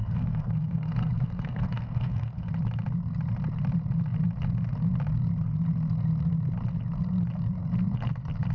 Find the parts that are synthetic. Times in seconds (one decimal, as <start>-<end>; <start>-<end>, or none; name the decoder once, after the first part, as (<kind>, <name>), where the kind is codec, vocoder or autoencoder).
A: 0.0-2.5 (codec, SNAC)